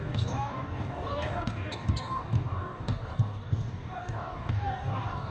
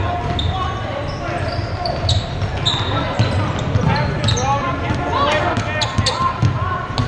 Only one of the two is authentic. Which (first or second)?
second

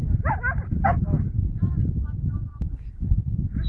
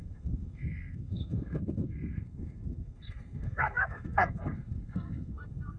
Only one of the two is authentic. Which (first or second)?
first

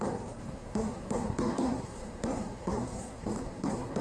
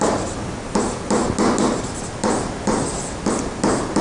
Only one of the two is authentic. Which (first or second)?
second